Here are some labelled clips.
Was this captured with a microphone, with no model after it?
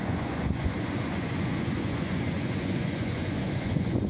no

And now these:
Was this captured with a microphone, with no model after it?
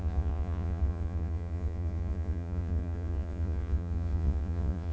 no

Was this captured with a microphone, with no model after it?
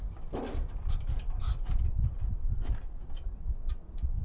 yes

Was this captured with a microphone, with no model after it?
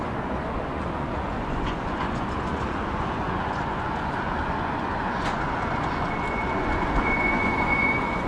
no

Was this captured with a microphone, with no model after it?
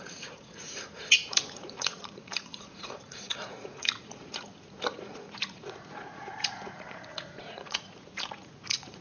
no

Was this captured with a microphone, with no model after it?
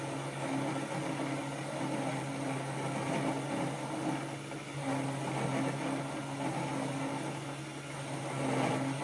yes